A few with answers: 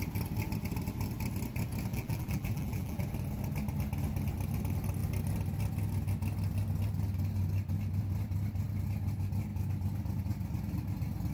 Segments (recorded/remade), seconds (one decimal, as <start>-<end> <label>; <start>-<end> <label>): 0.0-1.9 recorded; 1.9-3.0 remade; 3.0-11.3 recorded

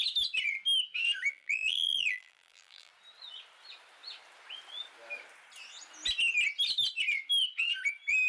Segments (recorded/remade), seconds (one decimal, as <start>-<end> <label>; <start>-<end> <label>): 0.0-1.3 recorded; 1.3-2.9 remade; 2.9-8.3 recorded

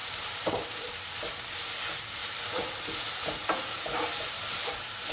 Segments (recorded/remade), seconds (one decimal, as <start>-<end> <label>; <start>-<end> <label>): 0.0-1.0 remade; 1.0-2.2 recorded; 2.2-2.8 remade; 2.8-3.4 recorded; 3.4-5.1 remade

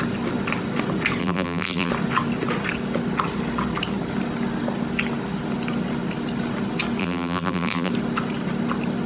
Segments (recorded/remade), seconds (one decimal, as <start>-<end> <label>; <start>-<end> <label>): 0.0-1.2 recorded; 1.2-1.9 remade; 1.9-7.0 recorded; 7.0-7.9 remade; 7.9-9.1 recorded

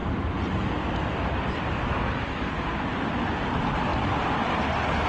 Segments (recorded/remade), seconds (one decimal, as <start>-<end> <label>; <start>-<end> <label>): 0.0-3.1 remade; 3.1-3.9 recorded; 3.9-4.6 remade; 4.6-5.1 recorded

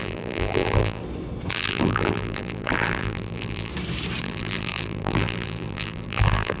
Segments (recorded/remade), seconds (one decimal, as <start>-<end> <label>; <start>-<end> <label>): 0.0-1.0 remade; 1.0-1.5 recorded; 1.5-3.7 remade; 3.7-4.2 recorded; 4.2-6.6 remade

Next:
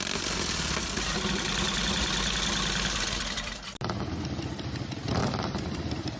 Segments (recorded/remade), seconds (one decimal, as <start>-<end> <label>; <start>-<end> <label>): 0.0-5.2 recorded; 5.2-6.2 remade